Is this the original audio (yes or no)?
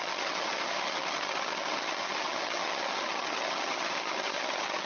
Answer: no